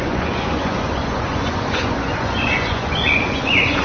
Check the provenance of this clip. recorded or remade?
remade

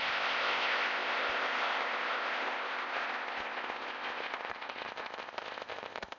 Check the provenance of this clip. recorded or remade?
remade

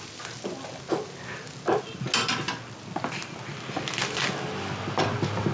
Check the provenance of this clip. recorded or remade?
recorded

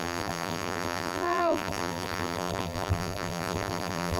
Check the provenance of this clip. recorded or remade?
remade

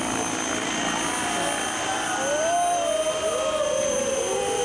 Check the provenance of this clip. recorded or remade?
recorded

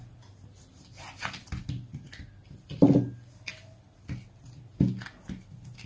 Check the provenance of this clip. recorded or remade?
recorded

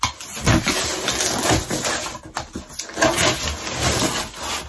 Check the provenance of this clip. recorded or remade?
recorded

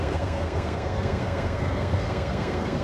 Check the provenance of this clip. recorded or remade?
remade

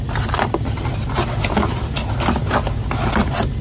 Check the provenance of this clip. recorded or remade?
recorded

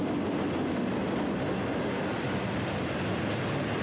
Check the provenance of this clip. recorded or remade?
recorded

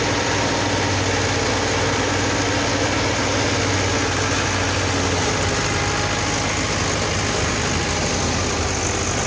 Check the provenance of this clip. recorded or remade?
recorded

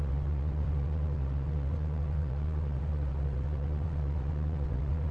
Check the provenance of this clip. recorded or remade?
remade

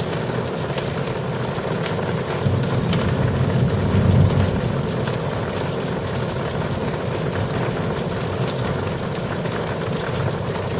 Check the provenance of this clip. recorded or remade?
recorded